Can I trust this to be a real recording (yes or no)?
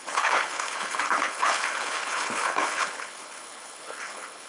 no